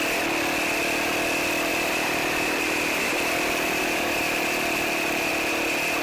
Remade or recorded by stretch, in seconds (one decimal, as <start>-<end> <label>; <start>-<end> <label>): 0.0-1.7 recorded; 1.7-5.3 remade; 5.3-6.0 recorded